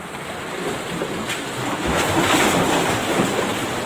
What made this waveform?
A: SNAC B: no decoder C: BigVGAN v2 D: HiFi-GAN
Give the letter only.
B